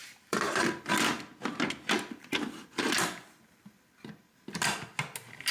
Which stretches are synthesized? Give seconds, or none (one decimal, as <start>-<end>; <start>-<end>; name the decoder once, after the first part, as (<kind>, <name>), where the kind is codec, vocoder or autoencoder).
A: 0.0-0.8 (vocoder, BigVGAN v2)